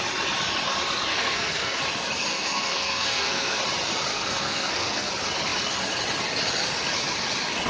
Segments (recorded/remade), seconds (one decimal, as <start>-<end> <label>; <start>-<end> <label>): 0.0-1.1 recorded; 1.1-1.8 remade; 1.8-2.3 recorded; 2.3-3.6 remade; 3.6-4.1 recorded; 4.1-5.1 remade; 5.1-7.7 recorded